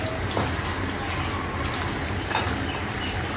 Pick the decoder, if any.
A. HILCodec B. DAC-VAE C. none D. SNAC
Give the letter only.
C